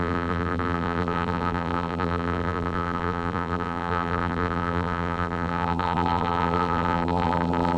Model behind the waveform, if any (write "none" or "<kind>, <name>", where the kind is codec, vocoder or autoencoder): vocoder, BigVGAN v2